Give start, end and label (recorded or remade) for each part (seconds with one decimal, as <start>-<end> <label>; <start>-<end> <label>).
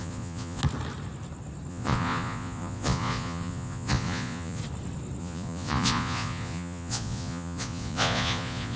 0.0-0.6 remade; 0.6-1.7 recorded; 1.7-4.6 remade; 4.6-5.2 recorded; 5.2-8.8 remade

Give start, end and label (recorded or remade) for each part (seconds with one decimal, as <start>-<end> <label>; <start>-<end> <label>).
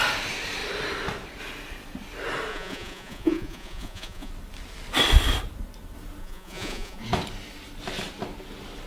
0.0-2.5 recorded; 2.5-4.3 remade; 4.3-6.2 recorded; 6.2-7.0 remade; 7.0-8.9 recorded